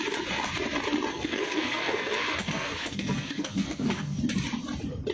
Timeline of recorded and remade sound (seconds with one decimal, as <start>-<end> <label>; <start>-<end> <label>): 0.0-1.1 recorded; 1.1-4.2 remade; 4.2-5.1 recorded